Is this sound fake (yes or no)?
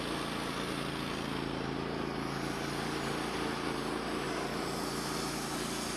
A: no